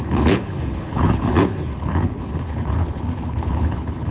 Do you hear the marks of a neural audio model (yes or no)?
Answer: yes